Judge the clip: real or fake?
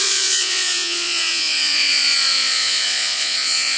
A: fake